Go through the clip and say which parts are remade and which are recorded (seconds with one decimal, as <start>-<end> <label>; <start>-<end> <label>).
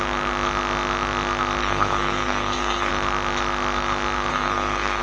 0.0-1.6 recorded; 1.6-2.9 remade; 2.9-4.3 recorded; 4.3-5.0 remade